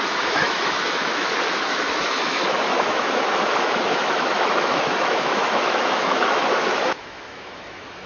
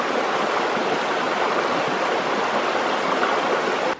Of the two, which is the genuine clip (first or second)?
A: second